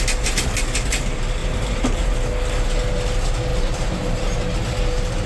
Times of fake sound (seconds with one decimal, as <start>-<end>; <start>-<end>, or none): 1.4-2.1; 3.5-4.2